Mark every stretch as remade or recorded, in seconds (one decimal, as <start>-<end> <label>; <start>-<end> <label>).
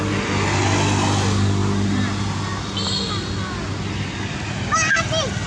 0.0-5.5 recorded